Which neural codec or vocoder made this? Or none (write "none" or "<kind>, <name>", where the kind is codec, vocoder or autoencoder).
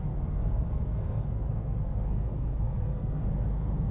codec, SNAC